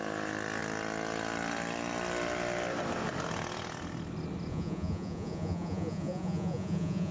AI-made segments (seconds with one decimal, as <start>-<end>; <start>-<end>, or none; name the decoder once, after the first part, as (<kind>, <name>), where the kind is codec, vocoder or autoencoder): 4.5-7.1 (vocoder, Vocos)